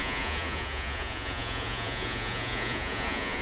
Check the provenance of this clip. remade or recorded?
remade